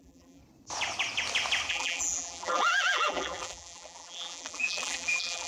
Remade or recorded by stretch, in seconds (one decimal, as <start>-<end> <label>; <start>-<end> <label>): 0.0-0.4 remade; 0.4-1.7 recorded; 1.7-5.5 remade